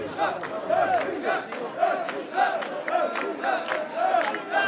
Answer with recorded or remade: recorded